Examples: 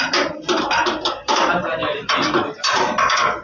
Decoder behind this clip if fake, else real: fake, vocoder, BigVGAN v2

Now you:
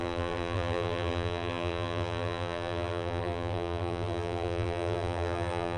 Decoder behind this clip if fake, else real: fake, vocoder, BigVGAN v2